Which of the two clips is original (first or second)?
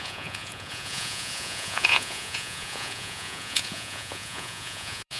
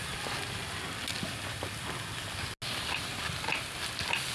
second